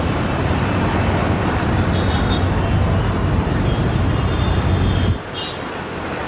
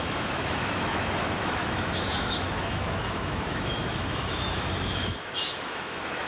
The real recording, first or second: first